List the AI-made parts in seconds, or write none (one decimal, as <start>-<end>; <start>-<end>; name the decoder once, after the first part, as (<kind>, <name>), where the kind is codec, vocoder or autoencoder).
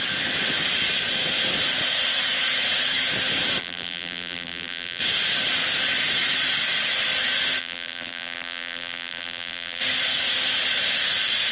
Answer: 3.6-5.0 (vocoder, BigVGAN v2); 7.6-9.8